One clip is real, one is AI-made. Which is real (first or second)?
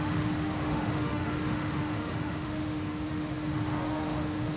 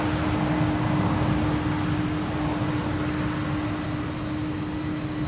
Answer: second